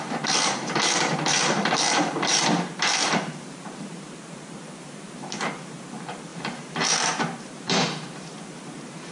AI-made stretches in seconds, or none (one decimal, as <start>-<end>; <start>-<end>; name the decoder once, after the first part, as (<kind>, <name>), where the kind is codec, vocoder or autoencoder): 0.0-9.1 (vocoder, BigVGAN v2)